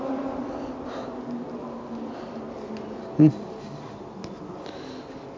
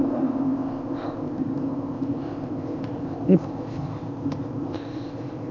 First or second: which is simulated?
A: second